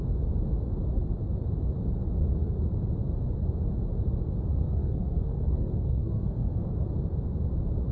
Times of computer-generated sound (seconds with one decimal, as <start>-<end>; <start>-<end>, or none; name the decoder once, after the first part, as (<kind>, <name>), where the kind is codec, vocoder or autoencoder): 4.5-6.9 (codec, SNAC)